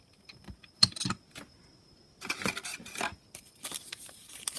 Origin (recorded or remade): recorded